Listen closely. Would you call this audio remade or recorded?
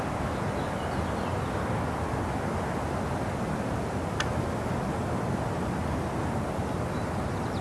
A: recorded